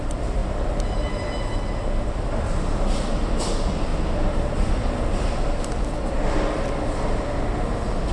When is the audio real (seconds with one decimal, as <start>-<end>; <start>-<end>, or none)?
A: 0.0-8.1